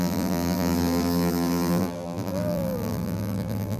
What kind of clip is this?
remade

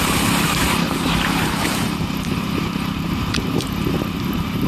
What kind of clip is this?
remade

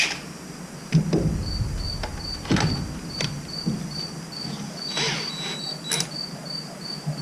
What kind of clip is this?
recorded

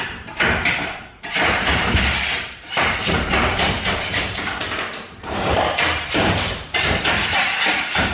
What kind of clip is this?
remade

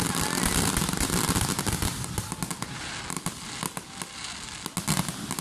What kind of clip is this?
recorded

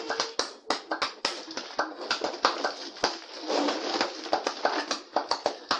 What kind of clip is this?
recorded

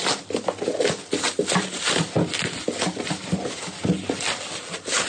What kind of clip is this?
recorded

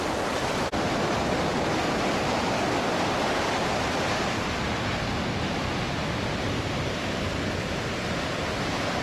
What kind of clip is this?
recorded